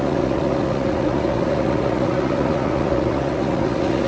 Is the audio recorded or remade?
remade